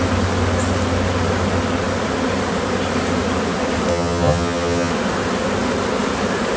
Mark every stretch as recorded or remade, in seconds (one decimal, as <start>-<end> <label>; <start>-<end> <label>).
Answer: 0.0-3.9 recorded; 3.9-4.9 remade; 4.9-6.6 recorded

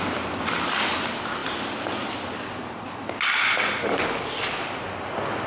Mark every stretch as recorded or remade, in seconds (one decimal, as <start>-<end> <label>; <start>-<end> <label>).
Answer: 0.0-5.5 recorded

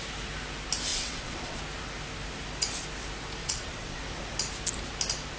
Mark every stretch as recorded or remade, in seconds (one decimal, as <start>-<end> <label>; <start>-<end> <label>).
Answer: 0.0-0.9 recorded; 0.9-1.6 remade; 1.6-3.4 recorded; 3.4-4.0 remade; 4.0-5.4 recorded

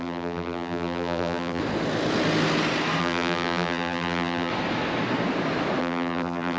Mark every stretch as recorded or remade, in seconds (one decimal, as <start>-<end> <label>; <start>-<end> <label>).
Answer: 0.0-1.6 remade; 1.6-3.0 recorded; 3.0-4.5 remade; 4.5-5.8 recorded; 5.8-6.6 remade

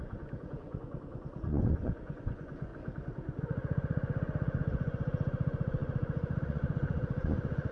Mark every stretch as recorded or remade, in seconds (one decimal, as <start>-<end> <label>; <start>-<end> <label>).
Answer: 0.0-2.7 remade; 2.7-3.4 recorded; 3.4-7.7 remade

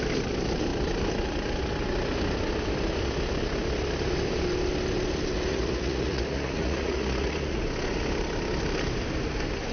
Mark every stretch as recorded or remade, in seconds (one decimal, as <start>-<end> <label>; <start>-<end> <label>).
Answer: 0.0-5.5 recorded; 5.5-7.6 remade; 7.6-9.7 recorded

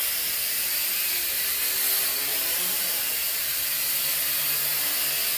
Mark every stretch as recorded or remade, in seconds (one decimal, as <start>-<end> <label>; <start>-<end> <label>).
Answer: 0.0-0.9 recorded; 0.9-1.6 remade; 1.6-2.3 recorded; 2.3-3.6 remade; 3.6-5.4 recorded